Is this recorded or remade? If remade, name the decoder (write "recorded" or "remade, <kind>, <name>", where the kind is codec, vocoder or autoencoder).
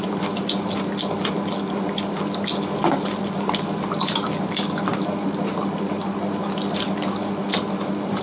recorded